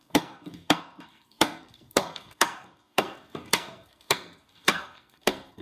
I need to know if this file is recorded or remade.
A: remade